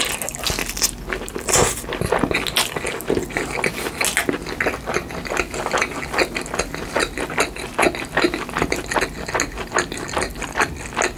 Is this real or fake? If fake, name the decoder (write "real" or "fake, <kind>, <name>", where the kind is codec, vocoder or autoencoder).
real